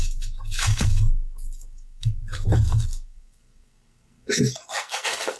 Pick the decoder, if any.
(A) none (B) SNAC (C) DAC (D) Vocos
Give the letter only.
B